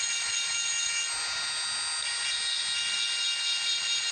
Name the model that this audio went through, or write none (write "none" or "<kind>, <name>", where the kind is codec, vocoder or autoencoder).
none